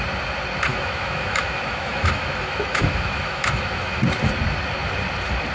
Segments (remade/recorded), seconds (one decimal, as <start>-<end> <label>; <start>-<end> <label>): 0.0-0.7 recorded; 0.7-4.0 remade; 4.0-5.5 recorded